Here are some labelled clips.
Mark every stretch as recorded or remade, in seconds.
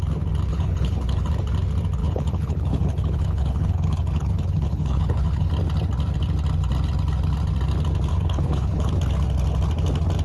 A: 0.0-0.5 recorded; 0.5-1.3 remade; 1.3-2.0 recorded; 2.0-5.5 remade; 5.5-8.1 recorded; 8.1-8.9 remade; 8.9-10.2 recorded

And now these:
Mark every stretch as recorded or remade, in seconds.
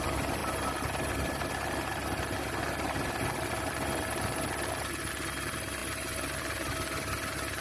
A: 0.0-7.6 recorded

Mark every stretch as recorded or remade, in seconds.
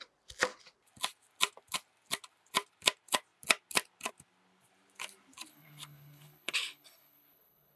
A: 0.0-5.5 recorded; 5.5-7.8 remade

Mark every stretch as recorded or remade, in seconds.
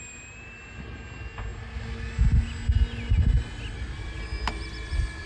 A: 0.0-5.3 recorded